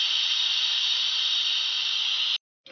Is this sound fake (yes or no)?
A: no